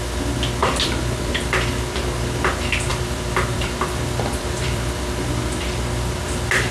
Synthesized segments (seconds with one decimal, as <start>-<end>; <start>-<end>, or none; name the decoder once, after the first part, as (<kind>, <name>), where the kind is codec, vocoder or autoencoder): 2.9-5.3 (vocoder, BigVGAN v2)

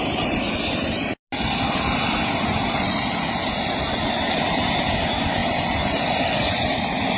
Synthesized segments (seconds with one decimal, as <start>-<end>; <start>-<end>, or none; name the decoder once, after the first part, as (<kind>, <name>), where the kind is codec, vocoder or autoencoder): none

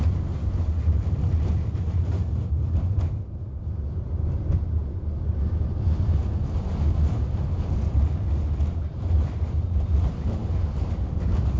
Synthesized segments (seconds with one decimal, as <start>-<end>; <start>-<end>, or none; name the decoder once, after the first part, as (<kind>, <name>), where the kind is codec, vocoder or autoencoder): 0.0-4.8 (vocoder, BigVGAN v2); 7.9-10.4; 10.9-11.6

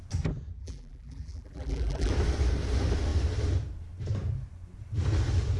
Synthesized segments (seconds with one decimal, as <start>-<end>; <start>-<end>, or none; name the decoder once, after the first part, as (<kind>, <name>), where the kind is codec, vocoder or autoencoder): 0.6-2.1 (vocoder, BigVGAN v2)

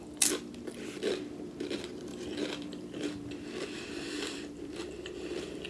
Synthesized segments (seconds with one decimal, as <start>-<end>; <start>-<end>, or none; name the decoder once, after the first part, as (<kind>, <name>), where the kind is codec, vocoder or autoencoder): 2.1-5.7 (vocoder, BigVGAN v2)